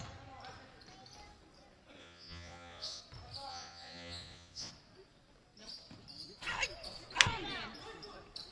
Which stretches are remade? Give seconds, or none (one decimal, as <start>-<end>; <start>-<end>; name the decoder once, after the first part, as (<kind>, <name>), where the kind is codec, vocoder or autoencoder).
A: 2.0-3.0 (vocoder, Vocos); 3.5-4.7